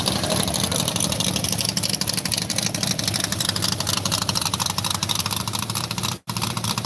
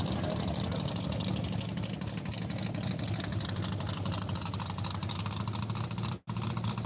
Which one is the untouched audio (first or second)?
second